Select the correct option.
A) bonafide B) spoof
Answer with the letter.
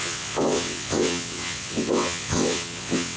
B